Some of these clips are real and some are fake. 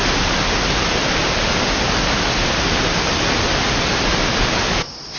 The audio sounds real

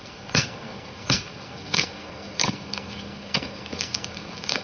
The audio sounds fake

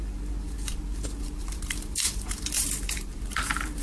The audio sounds fake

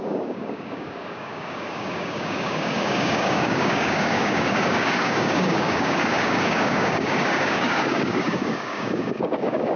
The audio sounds fake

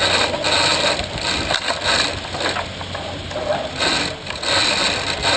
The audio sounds real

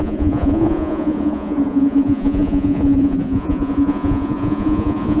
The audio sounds fake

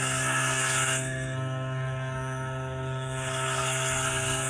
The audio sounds fake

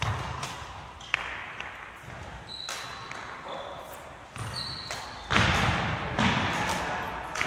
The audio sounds real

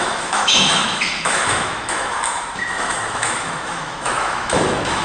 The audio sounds fake